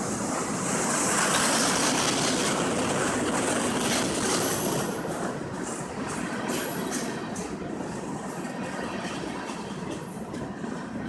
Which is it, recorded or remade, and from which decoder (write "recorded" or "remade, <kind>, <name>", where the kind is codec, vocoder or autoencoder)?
recorded